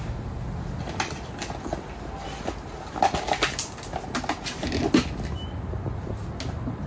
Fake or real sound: real